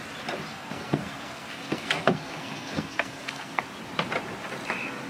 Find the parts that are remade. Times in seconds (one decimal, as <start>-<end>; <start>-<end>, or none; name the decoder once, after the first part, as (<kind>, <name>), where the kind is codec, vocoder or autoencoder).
0.5-3.6 (codec, SNAC)